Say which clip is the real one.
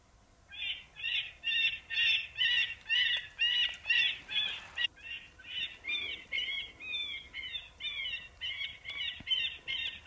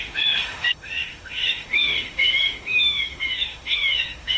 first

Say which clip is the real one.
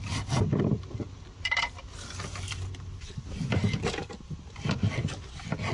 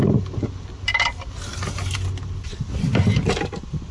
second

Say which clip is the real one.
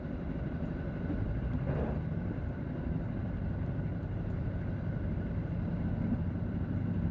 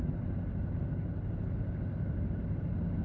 second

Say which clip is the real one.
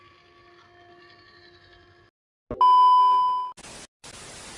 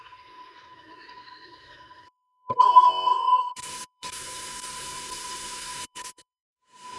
first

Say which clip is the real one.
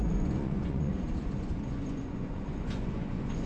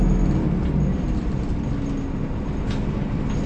second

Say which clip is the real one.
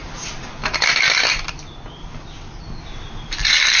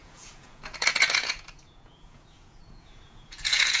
first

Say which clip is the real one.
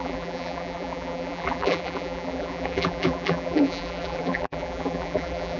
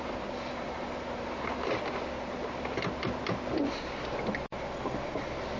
second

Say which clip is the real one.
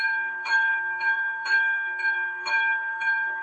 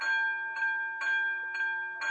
second